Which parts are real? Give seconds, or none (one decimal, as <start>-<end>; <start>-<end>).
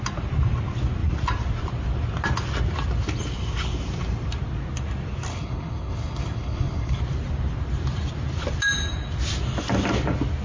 0.0-5.3; 7.0-10.4